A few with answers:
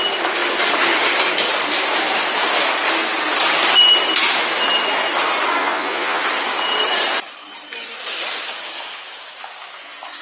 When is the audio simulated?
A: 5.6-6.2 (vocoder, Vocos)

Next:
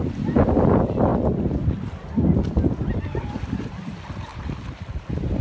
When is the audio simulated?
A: none

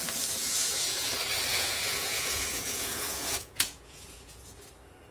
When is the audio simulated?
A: 0.4-1.1 (vocoder, Vocos); 1.5-4.6

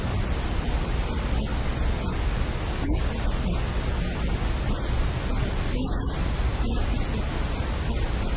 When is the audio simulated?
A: none

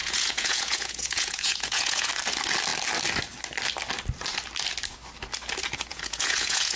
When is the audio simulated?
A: 0.0-2.1 (vocoder, Vocos); 5.9-6.8

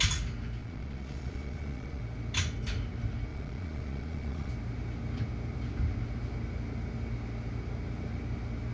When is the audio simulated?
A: 0.6-2.0 (vocoder, Vocos); 3.3-4.5

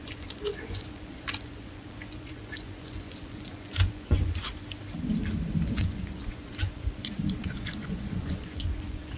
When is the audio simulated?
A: 0.0-4.5 (vocoder, Vocos); 5.7-9.2